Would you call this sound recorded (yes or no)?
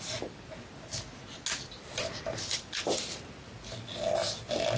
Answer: yes